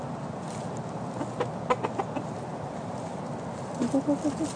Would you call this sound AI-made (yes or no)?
no